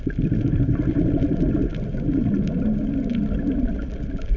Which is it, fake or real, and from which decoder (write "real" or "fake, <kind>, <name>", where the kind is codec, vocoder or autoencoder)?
real